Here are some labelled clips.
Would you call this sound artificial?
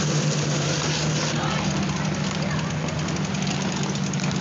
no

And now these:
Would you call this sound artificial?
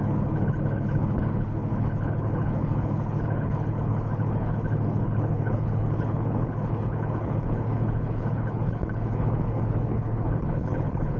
yes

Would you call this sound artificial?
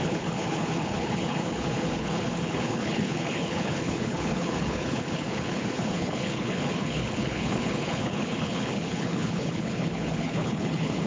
yes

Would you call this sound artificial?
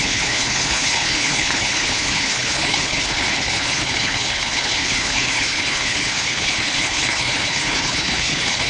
yes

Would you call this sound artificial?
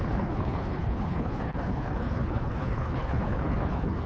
yes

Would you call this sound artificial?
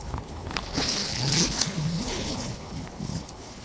yes